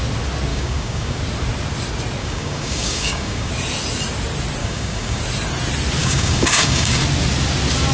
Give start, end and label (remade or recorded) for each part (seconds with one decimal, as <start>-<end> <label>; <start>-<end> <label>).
0.0-0.5 recorded; 0.5-1.2 remade; 1.2-2.2 recorded; 2.2-3.5 remade; 3.5-4.6 recorded; 4.6-5.2 remade; 5.2-6.0 recorded; 6.0-7.0 remade; 7.0-7.9 recorded